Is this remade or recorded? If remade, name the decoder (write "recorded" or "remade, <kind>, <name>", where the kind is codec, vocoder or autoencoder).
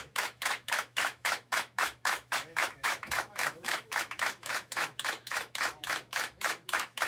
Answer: remade, autoencoder, DAC-VAE